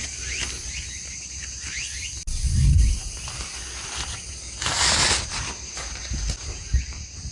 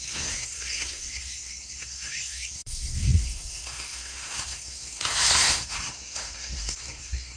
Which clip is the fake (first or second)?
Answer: second